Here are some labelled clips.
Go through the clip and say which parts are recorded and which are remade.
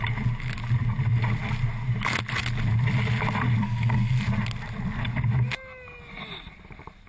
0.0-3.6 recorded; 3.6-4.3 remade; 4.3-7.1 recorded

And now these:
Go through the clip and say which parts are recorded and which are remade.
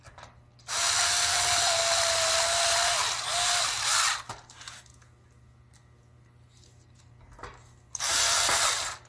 0.0-9.1 recorded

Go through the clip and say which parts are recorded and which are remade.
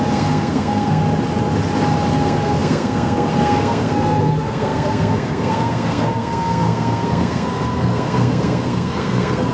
0.0-1.0 remade; 1.0-2.1 recorded; 2.1-9.5 remade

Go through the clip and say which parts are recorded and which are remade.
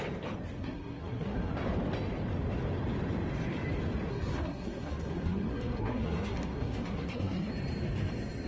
0.0-0.6 recorded; 0.6-1.5 remade; 1.5-4.1 recorded; 4.1-7.5 remade; 7.5-8.5 recorded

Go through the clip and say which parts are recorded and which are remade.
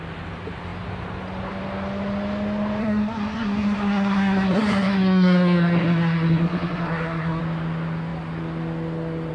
0.0-2.8 recorded; 2.8-7.4 remade; 7.4-9.3 recorded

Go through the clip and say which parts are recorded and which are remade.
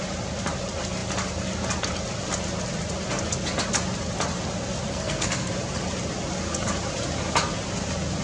0.0-4.9 recorded; 4.9-5.5 remade; 5.5-8.2 recorded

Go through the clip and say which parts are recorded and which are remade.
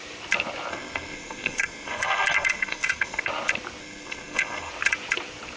0.0-0.7 recorded; 0.7-3.2 remade; 3.2-3.8 recorded; 3.8-4.7 remade; 4.7-5.6 recorded